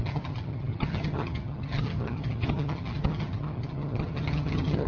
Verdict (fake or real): fake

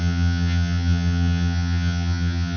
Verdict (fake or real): fake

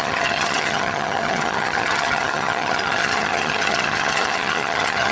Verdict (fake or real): fake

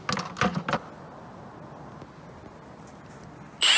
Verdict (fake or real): real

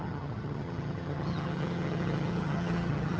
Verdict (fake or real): fake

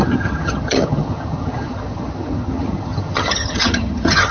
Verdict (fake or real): fake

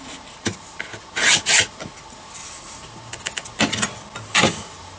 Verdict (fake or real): real